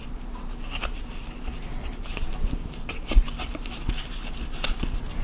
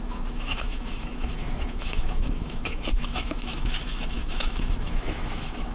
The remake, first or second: second